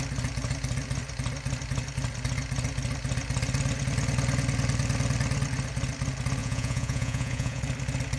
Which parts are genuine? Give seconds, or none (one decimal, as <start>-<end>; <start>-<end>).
0.0-6.4; 7.6-8.2